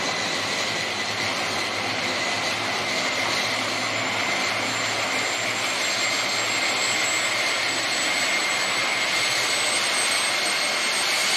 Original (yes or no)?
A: yes